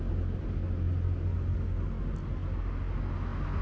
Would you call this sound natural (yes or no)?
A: yes